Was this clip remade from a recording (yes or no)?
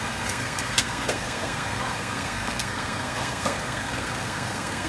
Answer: yes